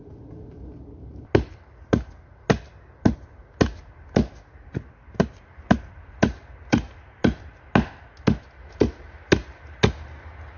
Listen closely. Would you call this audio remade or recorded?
recorded